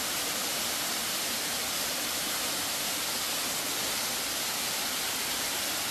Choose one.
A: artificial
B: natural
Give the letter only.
B